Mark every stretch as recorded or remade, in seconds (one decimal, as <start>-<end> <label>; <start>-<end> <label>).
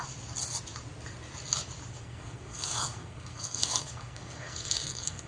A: 0.0-1.9 recorded; 1.9-5.3 remade